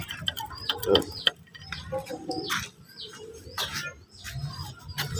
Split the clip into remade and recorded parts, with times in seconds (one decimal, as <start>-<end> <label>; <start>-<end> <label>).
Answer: 0.0-1.5 remade; 1.5-2.5 recorded; 2.5-3.7 remade; 3.7-4.8 recorded; 4.8-5.2 remade